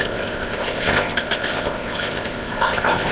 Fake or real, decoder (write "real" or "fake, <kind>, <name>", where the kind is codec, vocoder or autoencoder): fake, codec, ZipCodec